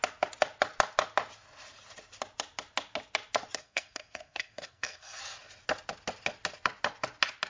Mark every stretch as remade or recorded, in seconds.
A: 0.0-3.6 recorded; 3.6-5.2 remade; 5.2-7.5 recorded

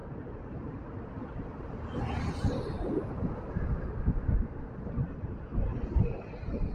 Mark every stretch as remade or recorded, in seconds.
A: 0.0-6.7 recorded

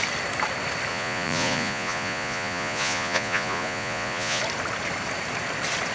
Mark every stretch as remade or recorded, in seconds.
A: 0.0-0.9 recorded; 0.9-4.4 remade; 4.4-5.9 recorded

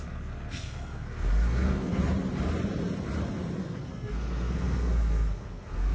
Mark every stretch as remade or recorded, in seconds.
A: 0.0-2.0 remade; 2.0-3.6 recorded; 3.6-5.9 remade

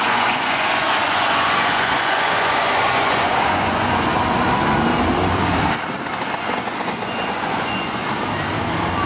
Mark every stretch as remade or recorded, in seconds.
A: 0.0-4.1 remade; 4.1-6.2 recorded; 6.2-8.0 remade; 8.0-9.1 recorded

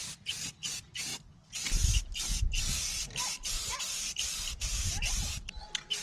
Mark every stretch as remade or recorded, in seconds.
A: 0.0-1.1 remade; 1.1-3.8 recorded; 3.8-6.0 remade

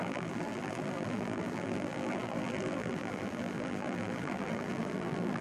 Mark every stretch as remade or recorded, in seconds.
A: 0.0-5.4 remade

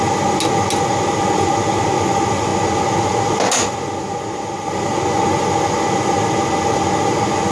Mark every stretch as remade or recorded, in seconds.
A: 0.0-7.5 recorded